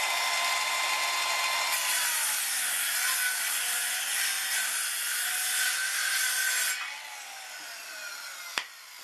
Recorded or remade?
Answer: recorded